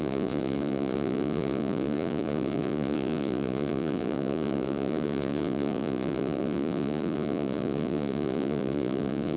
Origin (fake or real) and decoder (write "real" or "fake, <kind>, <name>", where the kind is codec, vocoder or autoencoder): fake, vocoder, Vocos